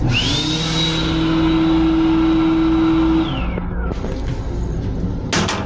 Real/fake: real